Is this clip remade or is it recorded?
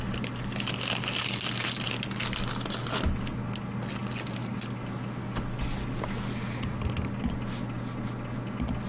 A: recorded